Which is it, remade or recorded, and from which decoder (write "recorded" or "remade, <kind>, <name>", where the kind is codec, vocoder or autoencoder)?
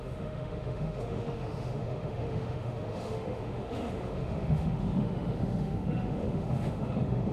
remade, autoencoder, DAC-VAE